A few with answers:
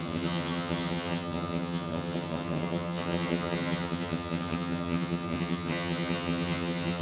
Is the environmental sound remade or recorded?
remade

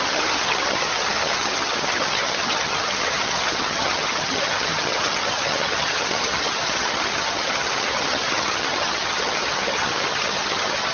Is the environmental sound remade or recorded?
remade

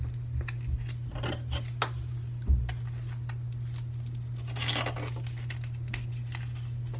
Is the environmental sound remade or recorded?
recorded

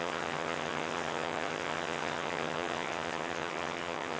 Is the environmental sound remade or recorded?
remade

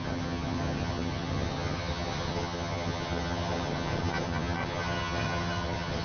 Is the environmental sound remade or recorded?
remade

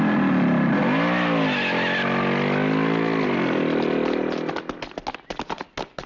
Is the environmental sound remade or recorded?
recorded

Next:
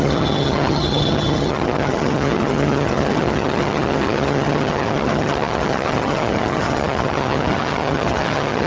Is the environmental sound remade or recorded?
remade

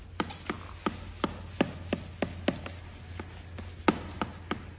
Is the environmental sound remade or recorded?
recorded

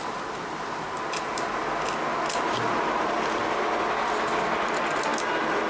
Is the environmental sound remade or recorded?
recorded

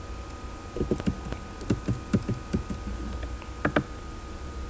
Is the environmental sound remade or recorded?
recorded